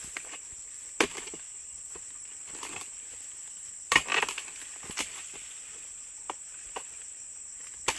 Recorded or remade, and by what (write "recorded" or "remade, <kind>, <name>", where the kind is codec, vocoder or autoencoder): remade, vocoder, BigVGAN v2